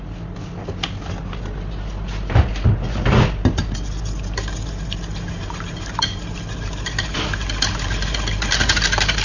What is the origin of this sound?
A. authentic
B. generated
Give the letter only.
A